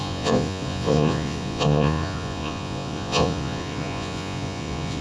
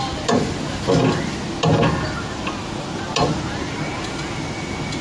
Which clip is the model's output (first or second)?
first